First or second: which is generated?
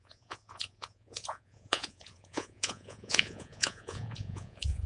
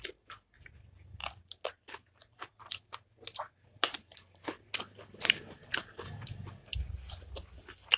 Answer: first